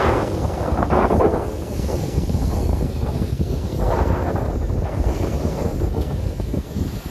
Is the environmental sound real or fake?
fake